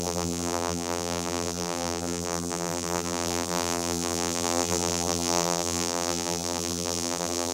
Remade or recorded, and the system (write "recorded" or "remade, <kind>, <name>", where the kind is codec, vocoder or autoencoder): remade, vocoder, BigVGAN v2